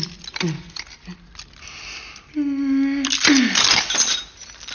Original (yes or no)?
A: yes